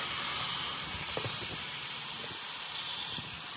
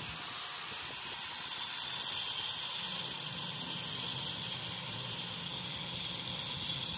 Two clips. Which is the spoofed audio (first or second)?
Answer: first